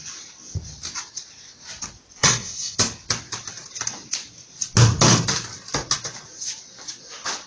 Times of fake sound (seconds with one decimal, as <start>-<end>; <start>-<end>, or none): 2.2-2.8